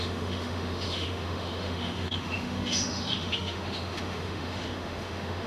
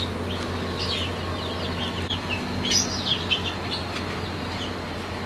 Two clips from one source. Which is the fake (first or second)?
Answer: first